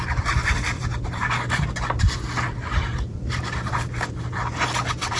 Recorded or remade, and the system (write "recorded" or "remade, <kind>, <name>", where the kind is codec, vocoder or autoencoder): recorded